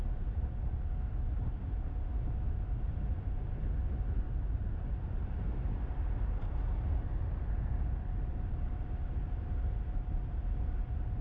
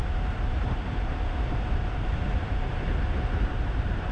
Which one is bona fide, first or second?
first